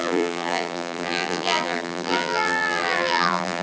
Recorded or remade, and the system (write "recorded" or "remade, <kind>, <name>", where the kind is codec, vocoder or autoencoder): remade, vocoder, BigVGAN v2